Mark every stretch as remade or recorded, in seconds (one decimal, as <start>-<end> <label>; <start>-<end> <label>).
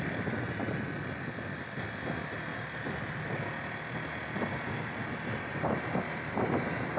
0.0-7.0 recorded